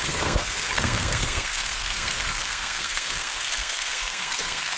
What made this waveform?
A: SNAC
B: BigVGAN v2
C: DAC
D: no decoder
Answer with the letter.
A